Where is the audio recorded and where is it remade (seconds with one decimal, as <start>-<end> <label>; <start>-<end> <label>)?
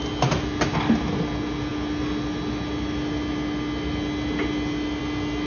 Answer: 0.0-5.5 recorded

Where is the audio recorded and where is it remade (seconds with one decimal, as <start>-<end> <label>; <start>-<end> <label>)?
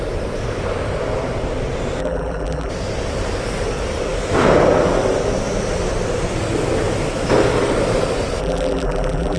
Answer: 0.0-2.0 recorded; 2.0-2.7 remade; 2.7-8.4 recorded; 8.4-9.4 remade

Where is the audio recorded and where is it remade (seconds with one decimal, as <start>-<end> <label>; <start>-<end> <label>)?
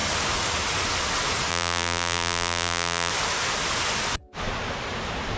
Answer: 0.0-1.5 recorded; 1.5-3.1 remade; 3.1-5.4 recorded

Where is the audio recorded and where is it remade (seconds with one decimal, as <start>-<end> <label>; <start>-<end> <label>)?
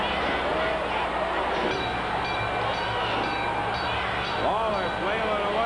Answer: 0.0-5.7 recorded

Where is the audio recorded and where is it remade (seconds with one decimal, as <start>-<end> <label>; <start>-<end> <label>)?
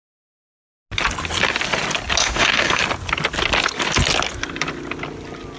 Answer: 0.0-2.2 recorded; 2.2-2.8 remade; 2.8-5.6 recorded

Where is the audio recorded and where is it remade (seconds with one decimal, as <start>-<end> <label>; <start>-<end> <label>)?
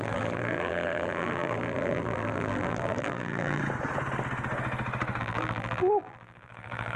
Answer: 0.0-3.6 remade; 3.6-5.2 recorded; 5.2-7.0 remade